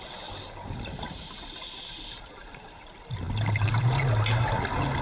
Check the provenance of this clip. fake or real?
real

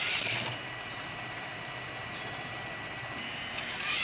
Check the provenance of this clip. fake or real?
real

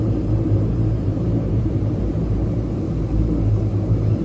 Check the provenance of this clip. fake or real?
fake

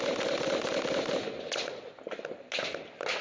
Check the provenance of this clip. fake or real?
real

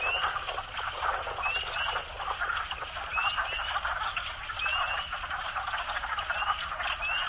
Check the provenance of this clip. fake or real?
real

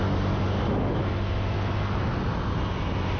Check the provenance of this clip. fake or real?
real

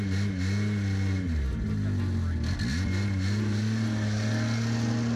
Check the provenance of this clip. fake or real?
real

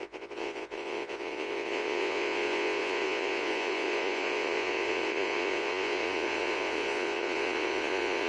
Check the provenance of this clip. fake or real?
fake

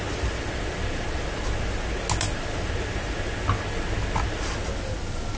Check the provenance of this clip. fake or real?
real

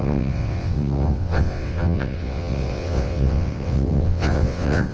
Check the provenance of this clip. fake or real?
fake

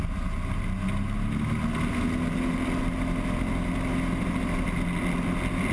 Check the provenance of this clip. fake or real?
real